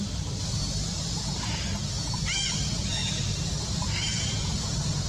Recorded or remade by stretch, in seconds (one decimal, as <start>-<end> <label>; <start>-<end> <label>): 0.0-5.1 recorded